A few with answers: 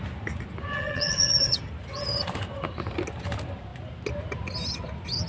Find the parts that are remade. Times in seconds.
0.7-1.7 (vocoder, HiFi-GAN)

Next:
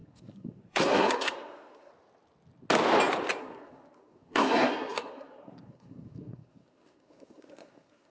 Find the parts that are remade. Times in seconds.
0.0-1.9 (codec, SNAC); 3.4-8.1

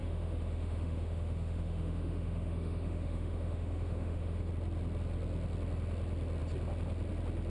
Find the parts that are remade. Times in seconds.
0.0-4.5 (autoencoder, DAC-VAE)

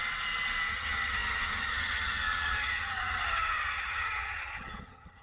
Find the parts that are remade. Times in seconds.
0.7-5.2 (vocoder, HiFi-GAN)

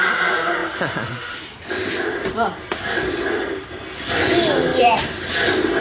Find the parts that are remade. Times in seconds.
0.6-4.1 (vocoder, BigVGAN v2); 4.7-5.3

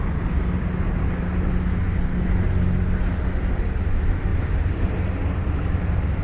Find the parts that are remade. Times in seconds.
none

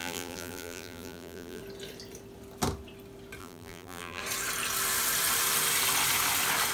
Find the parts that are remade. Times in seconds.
0.0-1.6 (vocoder, BigVGAN v2); 3.4-4.2

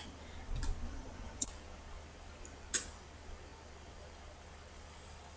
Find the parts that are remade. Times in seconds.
0.9-1.5 (vocoder, Vocos)